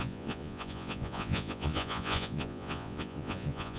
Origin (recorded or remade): remade